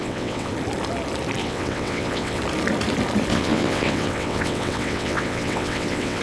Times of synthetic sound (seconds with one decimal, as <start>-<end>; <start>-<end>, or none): 0.0-0.5; 1.4-2.4; 3.3-6.2